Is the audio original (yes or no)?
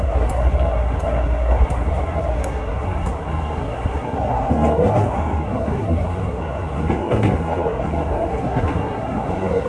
no